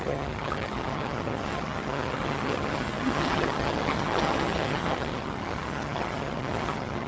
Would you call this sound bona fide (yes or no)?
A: no